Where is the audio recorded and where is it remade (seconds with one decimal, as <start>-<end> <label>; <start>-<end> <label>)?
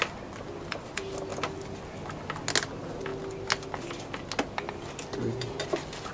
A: 0.0-6.1 recorded